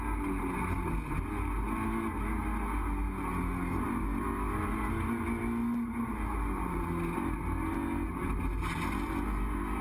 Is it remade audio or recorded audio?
recorded